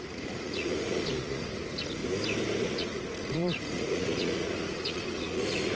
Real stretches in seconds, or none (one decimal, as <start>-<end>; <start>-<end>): 2.0-2.6